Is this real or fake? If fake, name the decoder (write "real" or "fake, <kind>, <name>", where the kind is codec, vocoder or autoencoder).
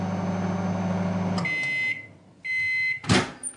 real